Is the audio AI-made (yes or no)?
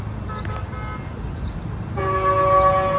no